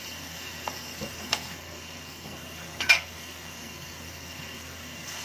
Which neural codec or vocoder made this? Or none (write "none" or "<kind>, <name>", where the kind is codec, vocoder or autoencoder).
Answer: codec, SNAC